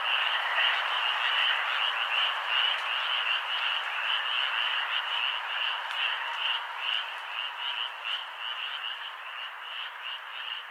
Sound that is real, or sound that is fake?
real